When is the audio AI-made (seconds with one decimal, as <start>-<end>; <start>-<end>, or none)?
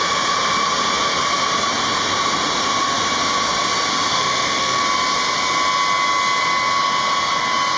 4.1-4.8